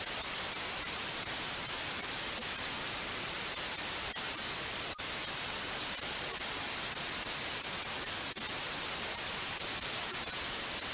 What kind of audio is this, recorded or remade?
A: recorded